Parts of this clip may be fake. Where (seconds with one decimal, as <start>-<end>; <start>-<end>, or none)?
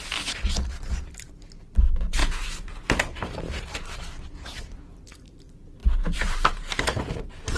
2.2-2.9; 5.8-6.8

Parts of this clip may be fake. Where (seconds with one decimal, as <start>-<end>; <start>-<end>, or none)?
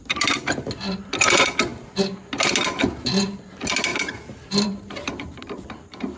3.9-6.2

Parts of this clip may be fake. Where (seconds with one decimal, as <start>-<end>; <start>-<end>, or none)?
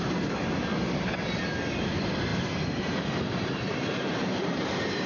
0.0-0.7; 1.8-5.1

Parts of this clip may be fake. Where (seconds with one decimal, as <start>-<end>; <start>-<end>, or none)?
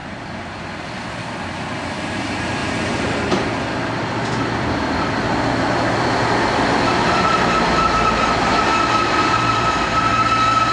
0.0-7.3; 9.2-10.1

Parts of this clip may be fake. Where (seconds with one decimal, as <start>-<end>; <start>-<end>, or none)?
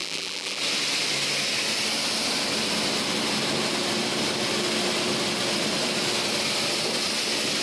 0.0-0.6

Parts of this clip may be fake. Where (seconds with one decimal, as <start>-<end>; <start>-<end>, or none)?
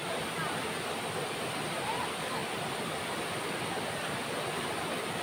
2.4-4.4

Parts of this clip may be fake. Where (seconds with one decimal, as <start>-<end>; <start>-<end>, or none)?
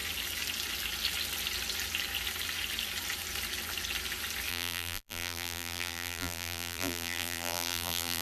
4.5-8.2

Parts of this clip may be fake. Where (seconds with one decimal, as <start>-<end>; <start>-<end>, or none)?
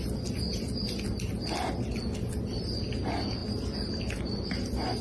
none